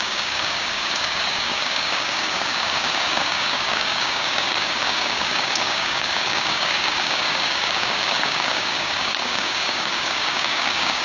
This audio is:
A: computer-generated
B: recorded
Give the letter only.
A